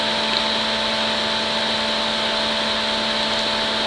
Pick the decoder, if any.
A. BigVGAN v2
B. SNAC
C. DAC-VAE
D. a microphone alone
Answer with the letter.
D